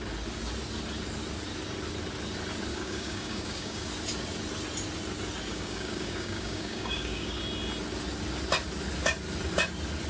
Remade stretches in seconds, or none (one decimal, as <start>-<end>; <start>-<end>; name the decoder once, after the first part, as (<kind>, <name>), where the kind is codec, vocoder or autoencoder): 2.7-3.9 (codec, DAC); 5.5-7.4